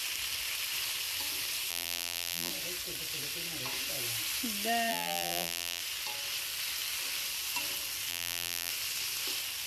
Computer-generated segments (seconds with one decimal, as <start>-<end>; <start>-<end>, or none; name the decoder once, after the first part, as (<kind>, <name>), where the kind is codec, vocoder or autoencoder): 1.7-2.5 (vocoder, BigVGAN v2); 4.9-5.8; 8.1-8.7

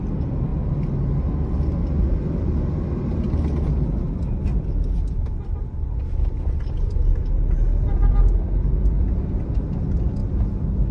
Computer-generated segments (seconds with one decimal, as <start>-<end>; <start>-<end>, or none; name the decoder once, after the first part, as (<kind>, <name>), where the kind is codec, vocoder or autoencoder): 4.5-9.2 (vocoder, BigVGAN v2); 10.2-10.9

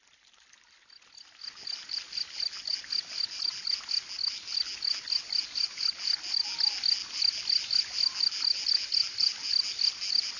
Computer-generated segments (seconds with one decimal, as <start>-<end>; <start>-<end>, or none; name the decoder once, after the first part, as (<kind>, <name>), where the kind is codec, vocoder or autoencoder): none

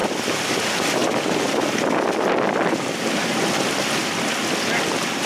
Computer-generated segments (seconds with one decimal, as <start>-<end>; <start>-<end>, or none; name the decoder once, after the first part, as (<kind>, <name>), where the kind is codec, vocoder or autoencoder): 0.6-1.0 (vocoder, BigVGAN v2); 4.0-5.3

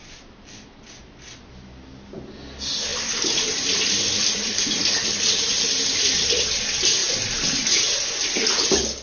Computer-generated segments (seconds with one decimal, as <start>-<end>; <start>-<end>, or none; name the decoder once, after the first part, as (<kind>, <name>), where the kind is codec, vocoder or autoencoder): 2.9-6.6 (vocoder, BigVGAN v2); 7.0-8.1